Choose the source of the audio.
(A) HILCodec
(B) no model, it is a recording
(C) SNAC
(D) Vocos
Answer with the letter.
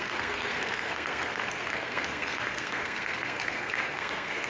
C